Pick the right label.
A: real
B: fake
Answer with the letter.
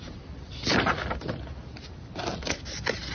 A